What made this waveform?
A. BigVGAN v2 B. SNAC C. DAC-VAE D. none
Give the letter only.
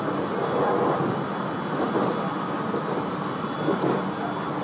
D